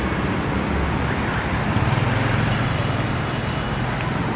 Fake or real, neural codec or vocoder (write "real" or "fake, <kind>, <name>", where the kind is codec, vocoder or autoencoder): real